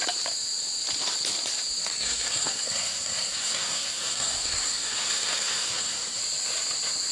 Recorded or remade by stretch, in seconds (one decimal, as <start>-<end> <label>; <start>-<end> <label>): 0.0-1.9 recorded; 1.9-6.2 remade; 6.2-7.1 recorded